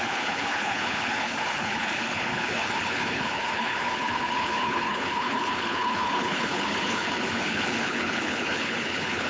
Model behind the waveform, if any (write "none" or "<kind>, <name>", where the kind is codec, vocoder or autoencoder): codec, HILCodec